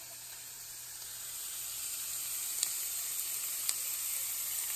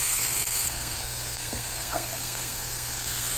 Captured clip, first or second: first